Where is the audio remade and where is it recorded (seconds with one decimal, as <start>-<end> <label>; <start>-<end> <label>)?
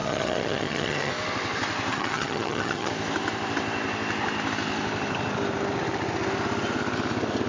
0.0-1.1 remade; 1.1-1.9 recorded; 1.9-2.9 remade; 2.9-7.5 recorded